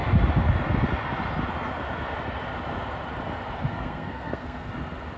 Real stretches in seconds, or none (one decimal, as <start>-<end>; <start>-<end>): 0.0-3.7; 4.7-5.2